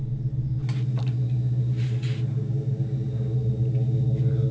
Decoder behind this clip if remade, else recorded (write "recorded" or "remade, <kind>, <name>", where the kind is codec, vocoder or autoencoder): recorded